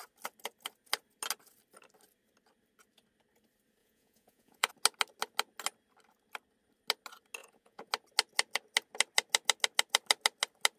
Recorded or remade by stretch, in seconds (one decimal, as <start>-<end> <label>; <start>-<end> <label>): 0.0-3.8 recorded; 3.8-4.7 remade; 4.7-7.4 recorded; 7.4-7.9 remade; 7.9-10.8 recorded